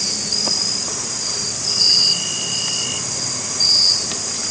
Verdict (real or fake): real